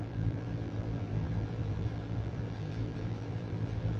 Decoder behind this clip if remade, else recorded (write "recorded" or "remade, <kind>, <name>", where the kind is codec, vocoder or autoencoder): remade, vocoder, BigVGAN v2